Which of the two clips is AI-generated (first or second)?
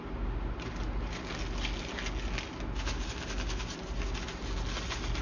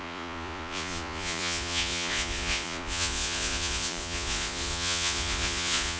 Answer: second